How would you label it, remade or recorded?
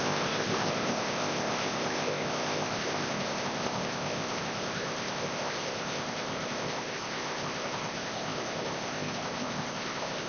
remade